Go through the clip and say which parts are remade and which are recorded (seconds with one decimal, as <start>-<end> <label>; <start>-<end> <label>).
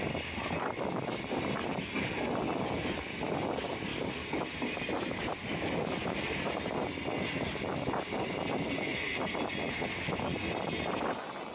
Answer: 0.0-8.9 recorded; 8.9-9.5 remade; 9.5-11.5 recorded